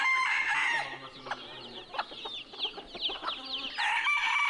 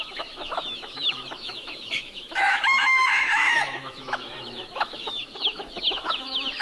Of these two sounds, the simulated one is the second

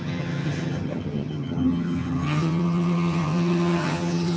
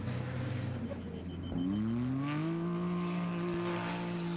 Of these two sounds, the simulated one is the first